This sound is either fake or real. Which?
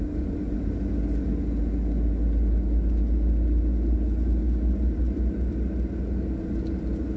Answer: real